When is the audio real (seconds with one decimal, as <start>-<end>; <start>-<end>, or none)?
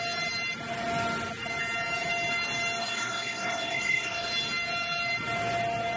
0.0-2.8; 4.3-6.0